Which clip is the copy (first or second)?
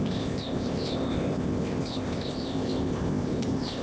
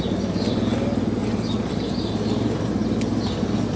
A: first